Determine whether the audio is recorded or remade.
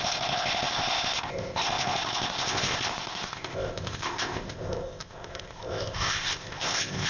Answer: remade